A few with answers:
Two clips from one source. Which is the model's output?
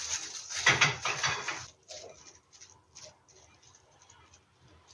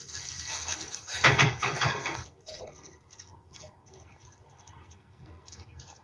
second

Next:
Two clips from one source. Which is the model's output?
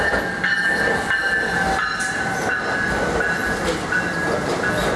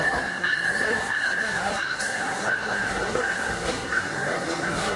second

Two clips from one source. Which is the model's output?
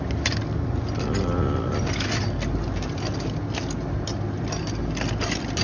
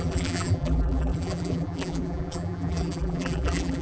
second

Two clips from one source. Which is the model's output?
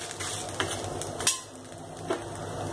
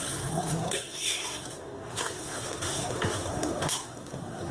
second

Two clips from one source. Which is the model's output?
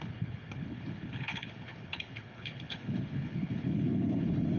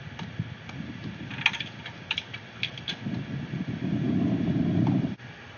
first